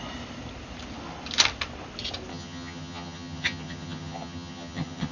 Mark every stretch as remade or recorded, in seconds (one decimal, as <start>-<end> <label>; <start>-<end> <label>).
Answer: 0.0-2.3 recorded; 2.3-5.1 remade